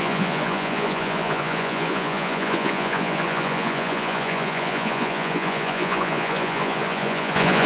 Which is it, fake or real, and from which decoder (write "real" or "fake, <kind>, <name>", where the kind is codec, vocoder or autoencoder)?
fake, vocoder, Vocos